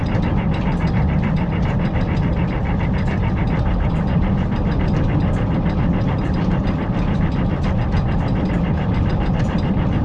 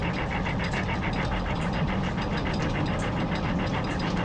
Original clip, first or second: second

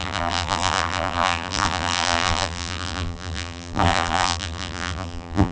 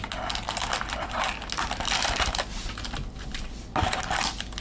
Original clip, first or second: second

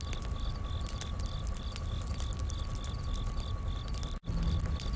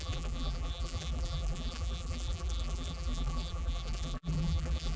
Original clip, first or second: first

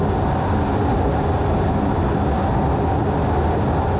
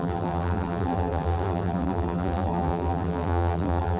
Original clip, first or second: first